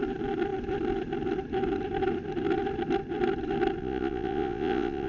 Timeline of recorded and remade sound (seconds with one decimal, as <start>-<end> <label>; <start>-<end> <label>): 0.0-3.8 recorded; 3.8-5.1 remade